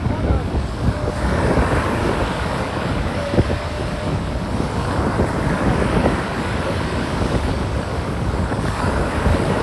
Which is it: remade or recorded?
remade